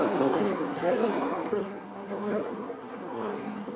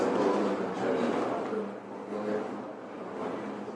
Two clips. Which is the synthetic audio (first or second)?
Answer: first